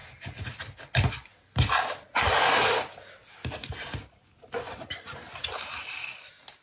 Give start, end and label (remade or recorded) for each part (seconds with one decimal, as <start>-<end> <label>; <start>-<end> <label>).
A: 0.0-6.6 recorded